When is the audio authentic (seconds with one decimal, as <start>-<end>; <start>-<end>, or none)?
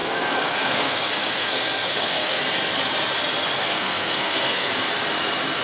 2.4-3.6; 4.7-5.6